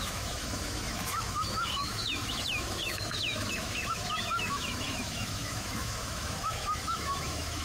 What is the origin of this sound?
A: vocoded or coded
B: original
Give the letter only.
A